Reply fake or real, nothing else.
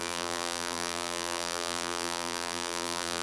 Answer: fake